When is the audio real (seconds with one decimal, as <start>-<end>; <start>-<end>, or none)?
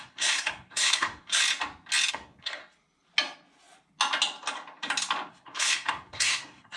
1.4-2.1; 2.6-5.3